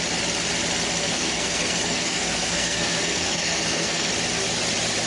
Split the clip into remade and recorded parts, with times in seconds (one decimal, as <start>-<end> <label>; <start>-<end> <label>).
0.0-1.0 recorded; 1.0-4.1 remade; 4.1-5.1 recorded